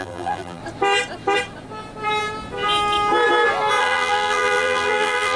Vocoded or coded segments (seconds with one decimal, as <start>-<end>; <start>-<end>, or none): 0.0-0.6; 3.8-5.4